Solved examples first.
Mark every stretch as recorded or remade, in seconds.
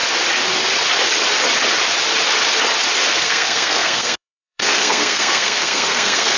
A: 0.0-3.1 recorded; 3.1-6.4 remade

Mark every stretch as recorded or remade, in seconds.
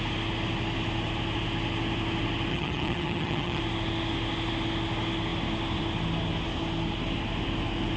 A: 0.0-2.5 recorded; 2.5-3.6 remade; 3.6-8.0 recorded